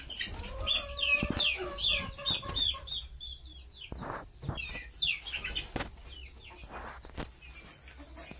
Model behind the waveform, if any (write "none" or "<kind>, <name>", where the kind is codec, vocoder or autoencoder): none